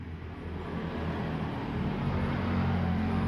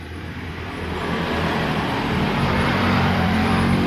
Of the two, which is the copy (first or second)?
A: second